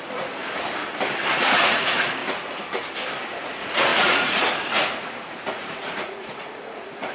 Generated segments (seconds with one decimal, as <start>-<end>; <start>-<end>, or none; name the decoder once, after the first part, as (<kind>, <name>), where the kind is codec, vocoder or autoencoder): 0.0-0.4 (vocoder, Vocos); 1.3-2.2; 3.4-7.1